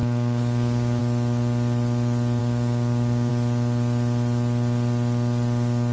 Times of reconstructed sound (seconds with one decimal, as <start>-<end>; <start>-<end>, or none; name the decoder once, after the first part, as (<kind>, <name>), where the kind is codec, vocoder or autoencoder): 0.0-1.0 (codec, DAC); 2.4-3.3